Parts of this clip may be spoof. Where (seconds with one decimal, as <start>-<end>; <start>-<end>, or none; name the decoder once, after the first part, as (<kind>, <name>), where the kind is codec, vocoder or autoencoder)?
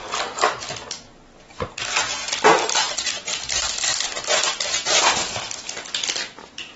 none